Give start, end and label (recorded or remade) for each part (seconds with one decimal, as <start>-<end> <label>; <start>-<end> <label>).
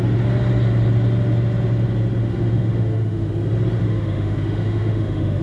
0.0-2.2 recorded; 2.2-3.3 remade; 3.3-3.8 recorded; 3.8-5.4 remade